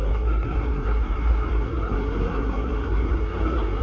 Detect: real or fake fake